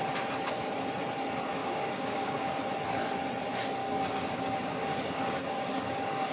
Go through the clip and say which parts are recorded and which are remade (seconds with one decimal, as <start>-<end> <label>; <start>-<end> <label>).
0.0-1.6 recorded; 1.6-2.6 remade; 2.6-3.8 recorded; 3.8-6.3 remade